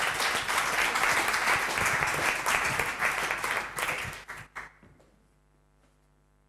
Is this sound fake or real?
real